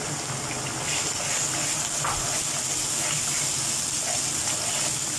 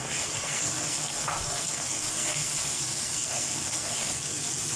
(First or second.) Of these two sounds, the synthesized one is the second